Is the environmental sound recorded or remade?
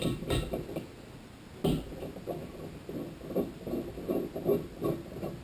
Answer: recorded